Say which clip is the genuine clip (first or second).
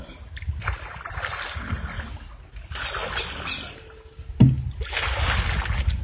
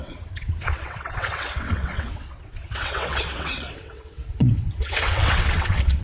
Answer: first